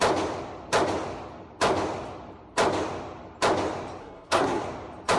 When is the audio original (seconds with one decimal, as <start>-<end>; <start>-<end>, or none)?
0.0-4.0; 4.6-5.2